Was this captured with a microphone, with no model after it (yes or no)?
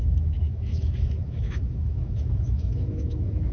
no